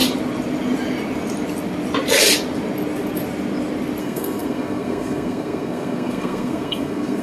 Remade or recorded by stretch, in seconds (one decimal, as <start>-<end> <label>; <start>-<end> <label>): 0.0-4.0 recorded; 4.0-7.2 remade